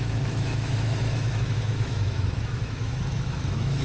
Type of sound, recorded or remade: remade